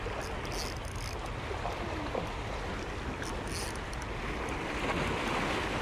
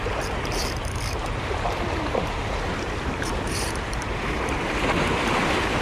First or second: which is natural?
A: first